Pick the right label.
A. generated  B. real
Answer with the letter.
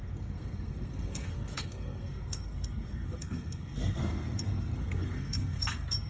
A